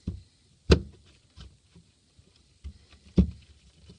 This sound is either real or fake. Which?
real